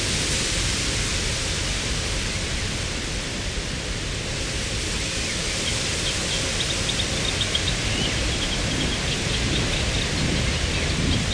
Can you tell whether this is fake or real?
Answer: real